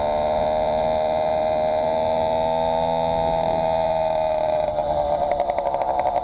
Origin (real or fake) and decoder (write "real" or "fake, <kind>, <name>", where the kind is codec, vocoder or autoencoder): real